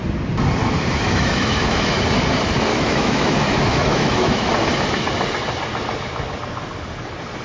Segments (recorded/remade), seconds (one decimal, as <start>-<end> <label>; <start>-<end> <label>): 0.0-0.6 recorded; 0.6-2.0 remade; 2.0-2.7 recorded; 2.7-4.5 remade; 4.5-7.4 recorded